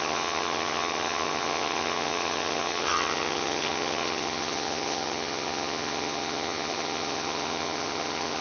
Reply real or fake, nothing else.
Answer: fake